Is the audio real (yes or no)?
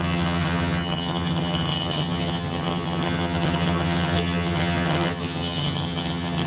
no